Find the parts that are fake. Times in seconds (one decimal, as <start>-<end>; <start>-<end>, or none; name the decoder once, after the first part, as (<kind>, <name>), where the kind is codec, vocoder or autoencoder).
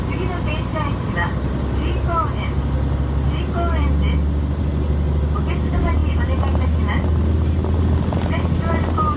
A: none